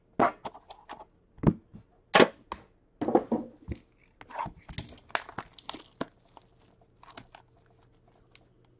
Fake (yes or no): no